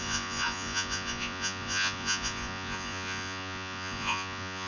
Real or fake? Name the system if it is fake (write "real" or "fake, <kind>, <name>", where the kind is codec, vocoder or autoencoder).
fake, vocoder, Vocos